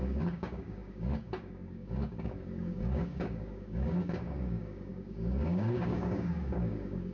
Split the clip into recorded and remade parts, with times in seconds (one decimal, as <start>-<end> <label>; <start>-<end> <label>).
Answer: 0.0-7.1 remade